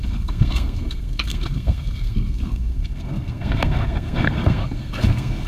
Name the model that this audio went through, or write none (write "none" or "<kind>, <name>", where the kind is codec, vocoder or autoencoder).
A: codec, SNAC